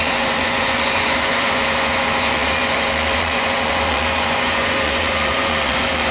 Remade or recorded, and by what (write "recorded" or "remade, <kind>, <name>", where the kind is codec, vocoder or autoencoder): remade, vocoder, Vocos